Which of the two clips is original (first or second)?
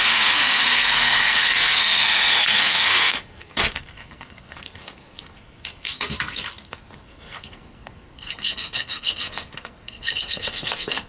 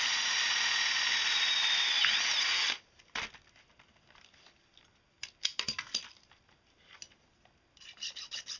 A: second